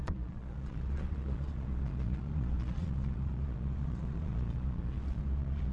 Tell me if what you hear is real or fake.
fake